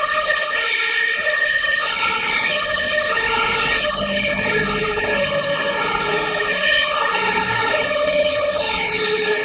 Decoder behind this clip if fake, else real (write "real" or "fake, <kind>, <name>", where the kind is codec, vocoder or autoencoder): fake, codec, HILCodec